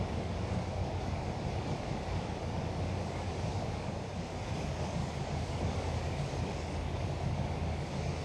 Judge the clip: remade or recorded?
remade